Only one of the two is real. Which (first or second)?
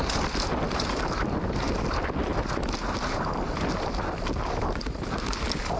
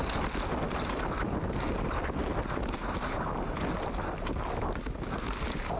second